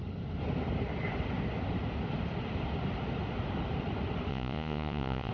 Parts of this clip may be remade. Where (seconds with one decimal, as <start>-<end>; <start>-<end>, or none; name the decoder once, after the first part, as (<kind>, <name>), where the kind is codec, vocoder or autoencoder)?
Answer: 4.3-5.3 (vocoder, Vocos)